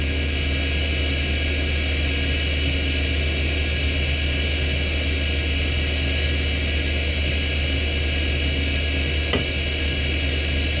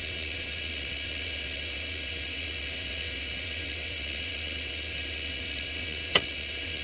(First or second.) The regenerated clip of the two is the second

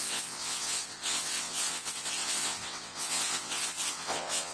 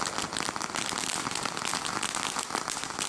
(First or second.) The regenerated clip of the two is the first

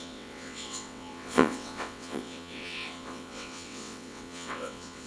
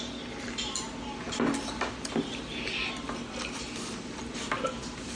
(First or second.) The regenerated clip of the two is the first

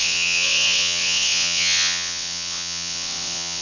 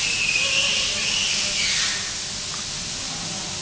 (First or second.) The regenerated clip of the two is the first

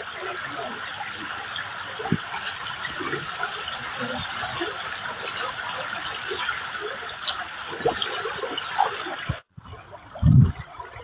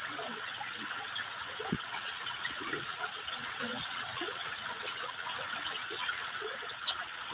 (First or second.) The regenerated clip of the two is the second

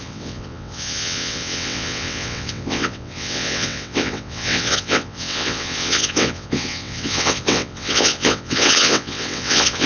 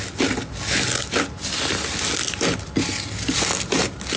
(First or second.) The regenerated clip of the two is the first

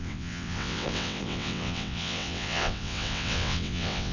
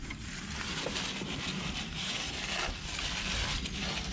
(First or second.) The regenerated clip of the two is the first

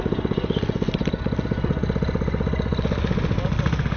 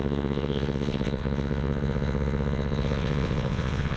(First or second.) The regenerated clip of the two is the second